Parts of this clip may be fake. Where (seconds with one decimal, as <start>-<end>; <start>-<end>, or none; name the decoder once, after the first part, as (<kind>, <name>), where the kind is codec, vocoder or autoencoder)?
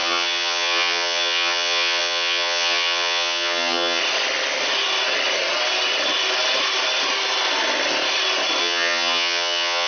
0.0-4.0 (vocoder, HiFi-GAN); 8.6-9.9